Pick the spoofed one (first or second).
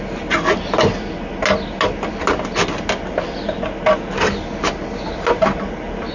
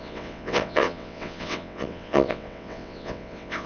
second